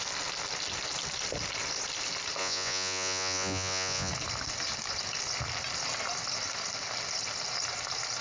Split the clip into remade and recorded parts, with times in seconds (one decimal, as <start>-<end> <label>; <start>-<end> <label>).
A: 0.0-2.4 recorded; 2.4-4.1 remade; 4.1-8.2 recorded